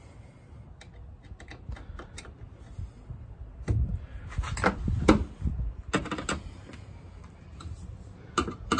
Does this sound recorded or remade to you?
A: recorded